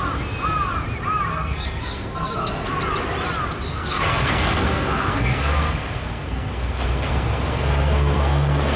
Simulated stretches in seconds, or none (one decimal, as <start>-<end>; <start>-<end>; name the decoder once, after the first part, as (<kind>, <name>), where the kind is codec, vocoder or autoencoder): 1.3-2.7 (codec, SNAC); 3.7-8.8